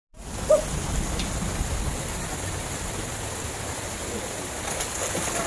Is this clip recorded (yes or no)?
yes